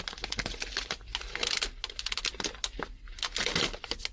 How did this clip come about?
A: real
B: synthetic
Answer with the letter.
A